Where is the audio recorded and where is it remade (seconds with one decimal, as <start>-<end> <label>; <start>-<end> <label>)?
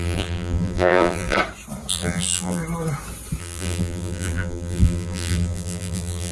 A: 0.0-1.4 remade; 1.4-1.9 recorded; 1.9-2.6 remade; 2.6-3.4 recorded; 3.4-6.3 remade